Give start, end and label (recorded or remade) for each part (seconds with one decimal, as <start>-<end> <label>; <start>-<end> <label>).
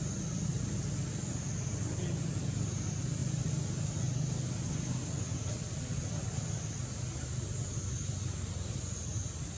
0.0-9.6 recorded